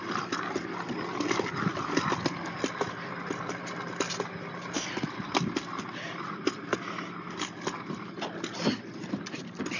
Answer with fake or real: real